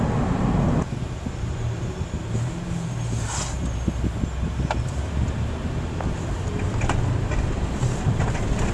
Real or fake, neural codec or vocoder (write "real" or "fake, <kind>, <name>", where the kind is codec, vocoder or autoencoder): real